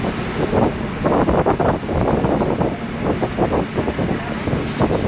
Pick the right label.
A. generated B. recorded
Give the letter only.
B